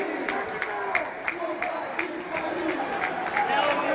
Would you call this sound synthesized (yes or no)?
no